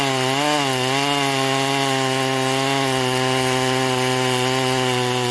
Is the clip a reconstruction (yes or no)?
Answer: no